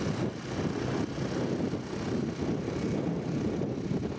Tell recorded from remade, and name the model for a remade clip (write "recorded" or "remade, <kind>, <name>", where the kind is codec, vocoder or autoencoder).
recorded